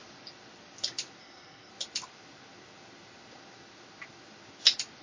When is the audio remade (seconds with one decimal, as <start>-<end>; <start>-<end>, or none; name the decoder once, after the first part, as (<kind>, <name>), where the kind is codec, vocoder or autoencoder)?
1.2-1.7 (codec, SNAC)